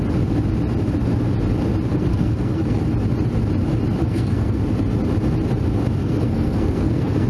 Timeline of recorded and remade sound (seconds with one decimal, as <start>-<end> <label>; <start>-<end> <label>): 0.0-1.9 recorded; 1.9-2.8 remade; 2.8-4.0 recorded; 4.0-4.6 remade; 4.6-6.0 recorded; 6.0-7.3 remade